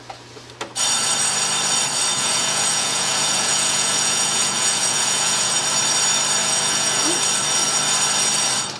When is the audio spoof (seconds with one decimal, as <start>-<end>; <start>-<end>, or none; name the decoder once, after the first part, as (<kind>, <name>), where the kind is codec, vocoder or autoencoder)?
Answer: 2.1-5.6 (vocoder, Vocos); 6.4-7.0